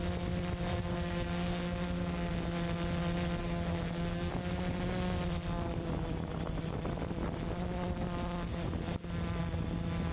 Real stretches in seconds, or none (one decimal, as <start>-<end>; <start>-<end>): 0.0-0.7; 2.3-3.4; 4.3-10.1